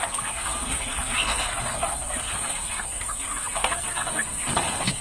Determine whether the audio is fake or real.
fake